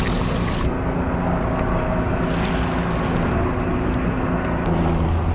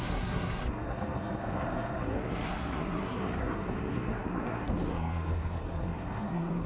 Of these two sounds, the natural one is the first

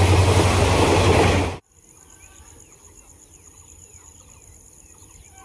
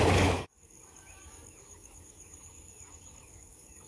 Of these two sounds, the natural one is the first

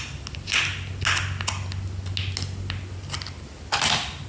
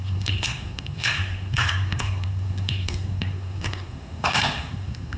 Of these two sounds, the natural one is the first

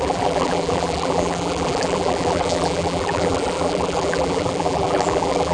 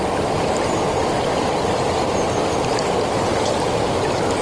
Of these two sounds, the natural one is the second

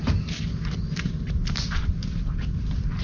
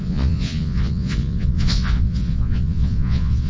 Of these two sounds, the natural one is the first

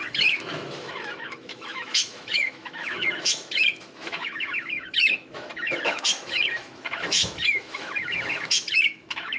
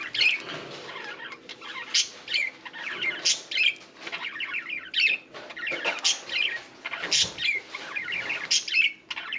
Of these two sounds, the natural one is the second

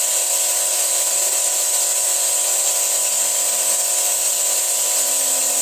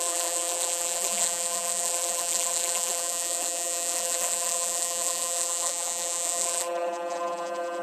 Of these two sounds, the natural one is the first